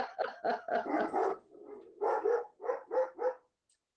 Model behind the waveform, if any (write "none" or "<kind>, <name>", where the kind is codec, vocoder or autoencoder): none